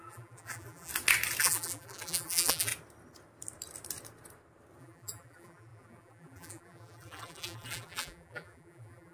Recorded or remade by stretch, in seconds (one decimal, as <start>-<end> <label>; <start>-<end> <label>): 0.0-0.9 remade; 0.9-1.4 recorded; 1.4-2.7 remade; 2.7-4.8 recorded; 4.8-9.1 remade